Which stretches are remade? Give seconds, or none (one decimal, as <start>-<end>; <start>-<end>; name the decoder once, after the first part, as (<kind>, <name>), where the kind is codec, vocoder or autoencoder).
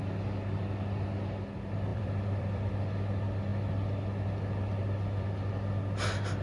1.9-2.7 (vocoder, BigVGAN v2)